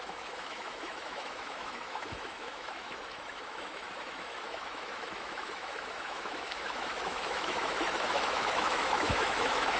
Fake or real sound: fake